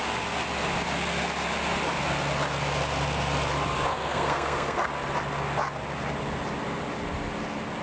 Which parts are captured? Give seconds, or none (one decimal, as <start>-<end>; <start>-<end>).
0.0-3.9; 4.9-7.8